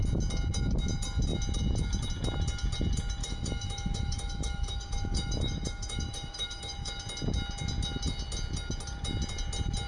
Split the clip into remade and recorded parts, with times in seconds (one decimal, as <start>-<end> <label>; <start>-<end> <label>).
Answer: 0.0-3.2 recorded; 3.2-6.9 remade; 6.9-9.9 recorded